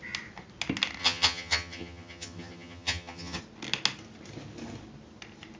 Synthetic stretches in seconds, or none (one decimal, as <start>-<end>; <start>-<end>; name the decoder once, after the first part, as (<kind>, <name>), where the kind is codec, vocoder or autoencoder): 1.0-3.4 (vocoder, HiFi-GAN)